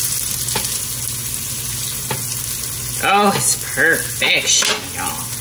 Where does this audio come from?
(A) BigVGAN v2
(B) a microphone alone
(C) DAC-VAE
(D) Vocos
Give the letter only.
B